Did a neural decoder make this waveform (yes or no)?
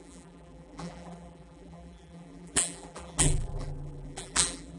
yes